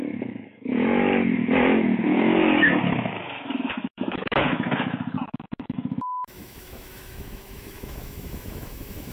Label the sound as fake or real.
fake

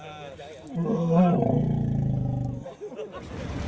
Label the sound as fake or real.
real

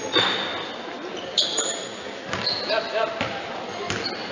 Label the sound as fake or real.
real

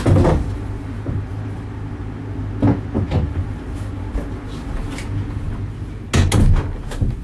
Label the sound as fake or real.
real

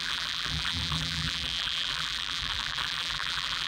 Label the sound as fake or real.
fake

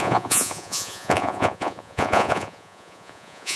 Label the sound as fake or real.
fake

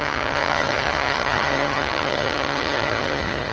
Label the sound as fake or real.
fake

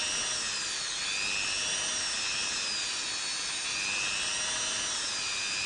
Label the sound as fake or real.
real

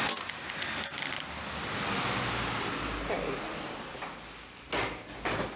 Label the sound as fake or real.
real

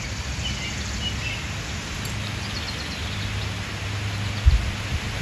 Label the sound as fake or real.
real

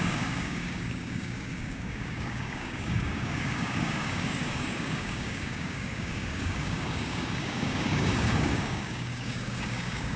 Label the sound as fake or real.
fake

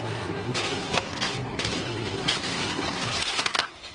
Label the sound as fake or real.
fake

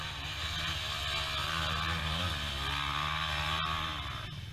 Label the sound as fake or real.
real